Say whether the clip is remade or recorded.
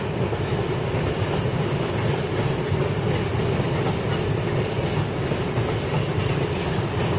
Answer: recorded